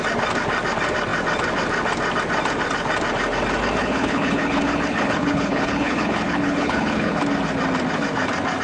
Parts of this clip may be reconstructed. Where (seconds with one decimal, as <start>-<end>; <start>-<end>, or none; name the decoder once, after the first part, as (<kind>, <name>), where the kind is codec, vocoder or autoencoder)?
3.8-7.2 (codec, HILCodec)